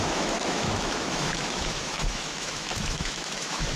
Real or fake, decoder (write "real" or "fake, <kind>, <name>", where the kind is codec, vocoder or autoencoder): fake, autoencoder, DAC-VAE